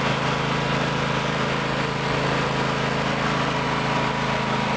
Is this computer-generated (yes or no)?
no